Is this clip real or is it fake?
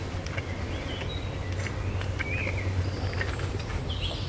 real